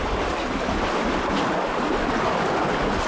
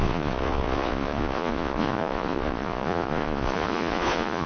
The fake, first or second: second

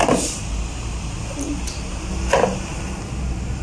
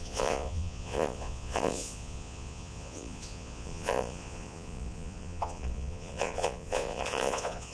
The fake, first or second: second